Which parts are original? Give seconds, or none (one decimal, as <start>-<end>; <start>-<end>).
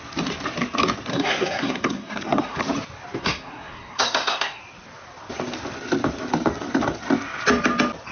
0.0-1.1; 2.6-3.2; 4.6-8.1